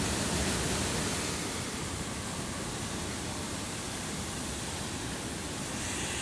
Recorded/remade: recorded